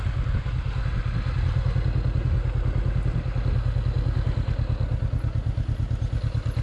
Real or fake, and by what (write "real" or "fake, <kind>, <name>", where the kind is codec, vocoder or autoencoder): real